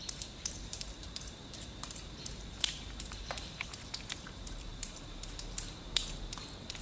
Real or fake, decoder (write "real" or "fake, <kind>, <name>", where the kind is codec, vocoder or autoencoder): fake, vocoder, BigVGAN v2